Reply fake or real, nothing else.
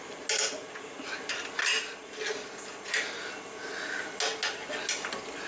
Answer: real